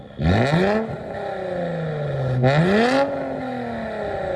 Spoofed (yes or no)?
no